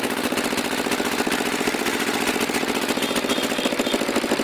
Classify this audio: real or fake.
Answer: real